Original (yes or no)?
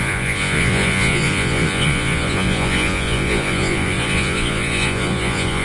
no